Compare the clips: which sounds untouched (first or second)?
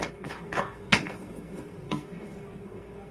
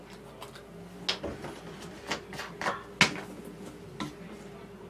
second